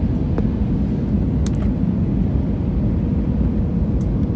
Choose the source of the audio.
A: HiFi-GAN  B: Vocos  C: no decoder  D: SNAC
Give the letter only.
C